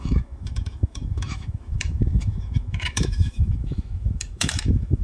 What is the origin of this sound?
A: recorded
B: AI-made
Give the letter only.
B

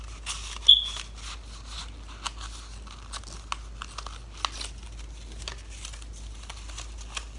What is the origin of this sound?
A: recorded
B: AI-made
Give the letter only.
A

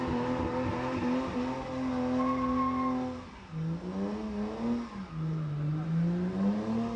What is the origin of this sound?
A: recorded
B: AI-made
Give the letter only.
A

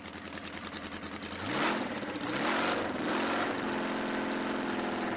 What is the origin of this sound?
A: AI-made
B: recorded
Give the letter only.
B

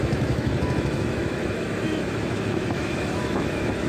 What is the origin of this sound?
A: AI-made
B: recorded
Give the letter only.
A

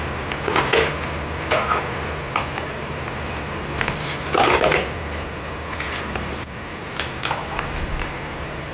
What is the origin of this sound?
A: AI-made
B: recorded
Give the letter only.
B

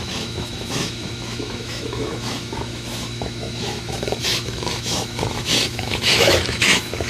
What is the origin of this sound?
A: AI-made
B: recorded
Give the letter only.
A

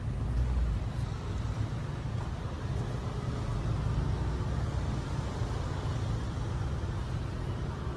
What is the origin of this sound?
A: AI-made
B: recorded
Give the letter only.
B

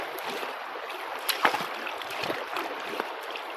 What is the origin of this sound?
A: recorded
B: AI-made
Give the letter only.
A